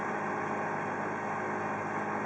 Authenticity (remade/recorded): recorded